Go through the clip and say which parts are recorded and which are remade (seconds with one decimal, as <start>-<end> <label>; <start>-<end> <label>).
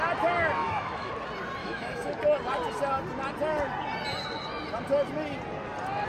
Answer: 0.0-0.6 recorded; 0.6-1.1 remade; 1.1-1.6 recorded; 1.6-2.1 remade; 2.1-6.1 recorded